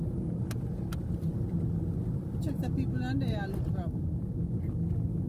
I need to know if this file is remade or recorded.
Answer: recorded